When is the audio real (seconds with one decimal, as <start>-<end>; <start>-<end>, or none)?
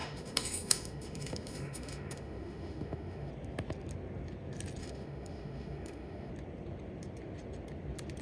3.3-4.8; 6.3-8.2